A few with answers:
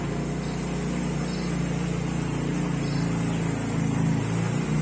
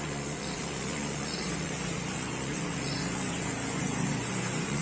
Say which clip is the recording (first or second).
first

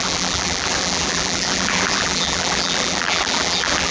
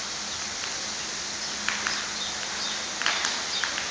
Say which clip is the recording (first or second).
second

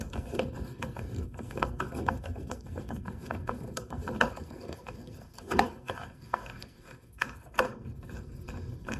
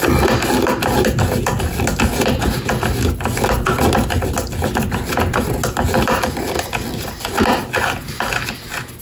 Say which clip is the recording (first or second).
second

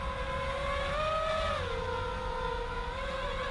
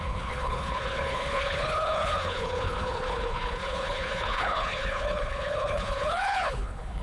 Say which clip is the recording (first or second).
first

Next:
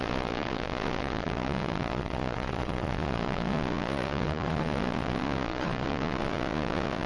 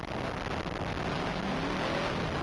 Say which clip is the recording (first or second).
second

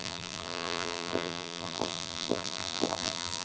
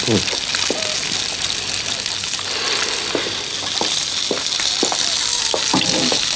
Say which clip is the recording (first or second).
second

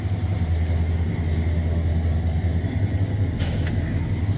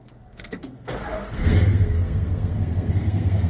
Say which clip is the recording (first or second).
first